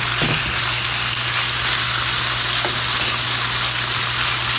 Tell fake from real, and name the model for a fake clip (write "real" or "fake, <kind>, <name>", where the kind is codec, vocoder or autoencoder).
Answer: real